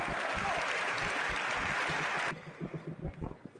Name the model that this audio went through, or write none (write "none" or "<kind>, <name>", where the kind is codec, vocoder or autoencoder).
none